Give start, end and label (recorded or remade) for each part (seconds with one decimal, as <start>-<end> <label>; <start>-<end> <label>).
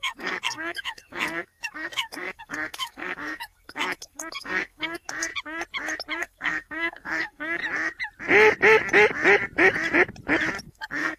0.0-5.3 remade; 5.3-6.2 recorded; 6.2-7.6 remade; 7.6-10.6 recorded; 10.6-11.2 remade